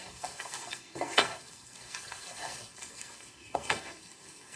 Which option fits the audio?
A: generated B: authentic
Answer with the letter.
A